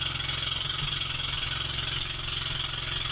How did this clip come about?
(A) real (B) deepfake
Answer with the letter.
A